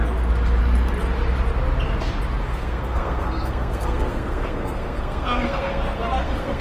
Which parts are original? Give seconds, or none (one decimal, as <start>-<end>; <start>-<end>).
0.0-2.5